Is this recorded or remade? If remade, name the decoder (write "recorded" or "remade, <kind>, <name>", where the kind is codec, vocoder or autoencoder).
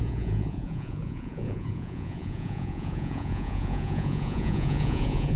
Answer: remade, vocoder, Vocos